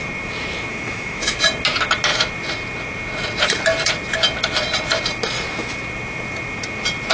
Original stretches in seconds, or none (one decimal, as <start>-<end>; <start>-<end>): 0.0-0.7; 1.4-7.1